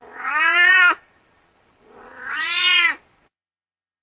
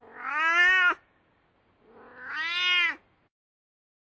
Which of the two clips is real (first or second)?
second